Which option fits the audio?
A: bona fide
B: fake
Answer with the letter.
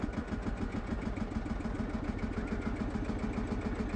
A